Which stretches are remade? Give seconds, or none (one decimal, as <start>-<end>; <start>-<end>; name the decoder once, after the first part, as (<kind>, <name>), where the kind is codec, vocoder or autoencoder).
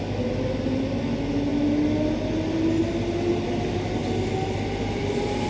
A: none